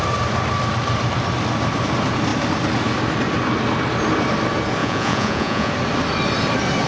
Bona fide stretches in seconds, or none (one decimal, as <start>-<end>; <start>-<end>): 0.0-4.8; 5.7-6.9